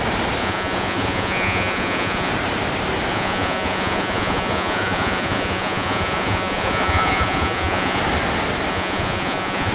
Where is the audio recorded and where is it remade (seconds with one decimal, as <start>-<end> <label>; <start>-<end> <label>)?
0.0-0.4 recorded; 0.4-2.3 remade; 2.3-3.1 recorded; 3.1-8.0 remade; 8.0-8.7 recorded; 8.7-9.7 remade